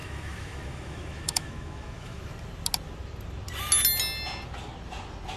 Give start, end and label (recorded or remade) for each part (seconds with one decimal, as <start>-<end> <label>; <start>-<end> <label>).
0.0-2.2 remade; 2.2-5.4 recorded